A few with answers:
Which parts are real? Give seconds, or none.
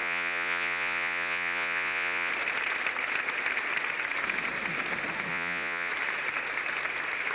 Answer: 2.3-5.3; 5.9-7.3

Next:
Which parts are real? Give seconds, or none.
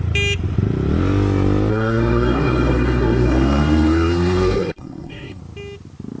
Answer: 0.0-1.7; 5.4-6.2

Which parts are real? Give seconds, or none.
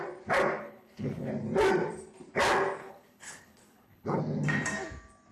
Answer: 0.0-0.6; 1.3-2.8; 4.2-5.3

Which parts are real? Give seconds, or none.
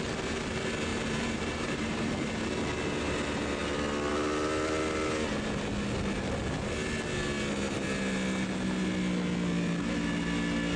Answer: 0.0-0.9; 2.3-10.8